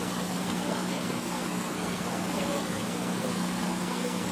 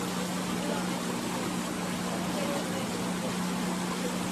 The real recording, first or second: second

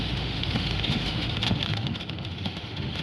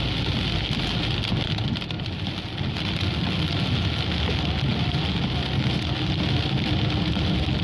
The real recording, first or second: second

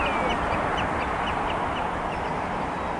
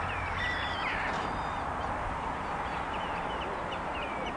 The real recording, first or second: first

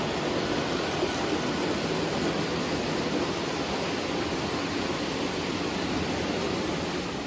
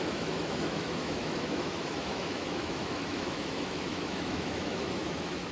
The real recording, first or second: first